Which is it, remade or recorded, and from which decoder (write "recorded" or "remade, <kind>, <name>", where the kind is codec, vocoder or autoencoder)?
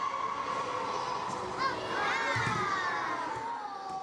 recorded